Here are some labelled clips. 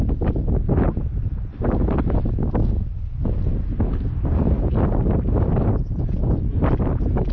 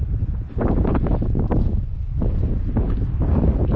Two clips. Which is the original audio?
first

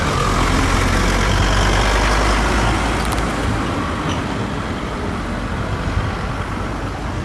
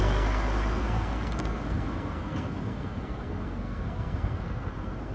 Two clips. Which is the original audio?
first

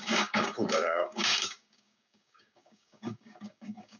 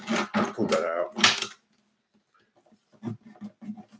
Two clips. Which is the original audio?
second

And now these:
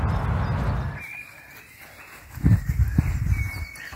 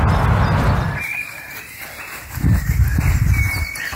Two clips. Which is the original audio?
first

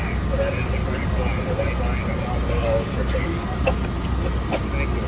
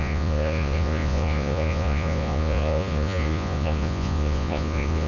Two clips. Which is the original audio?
first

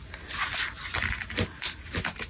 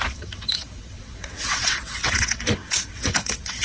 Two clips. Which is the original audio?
first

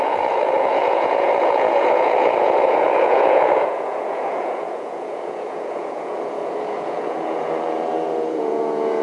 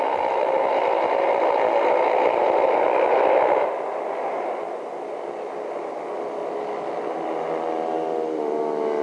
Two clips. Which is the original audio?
second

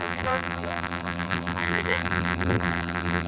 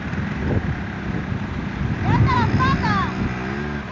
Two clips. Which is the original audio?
second